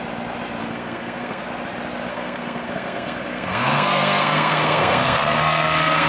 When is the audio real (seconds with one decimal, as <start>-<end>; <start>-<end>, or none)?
0.0-0.6; 1.4-2.1